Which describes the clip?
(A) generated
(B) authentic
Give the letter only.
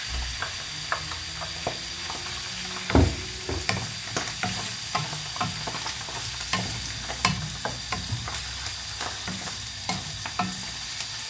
B